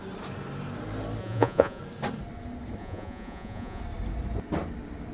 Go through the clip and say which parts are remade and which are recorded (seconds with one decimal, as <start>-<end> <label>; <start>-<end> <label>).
0.0-1.2 recorded; 1.2-1.8 remade; 1.8-2.8 recorded; 2.8-3.8 remade; 3.8-5.1 recorded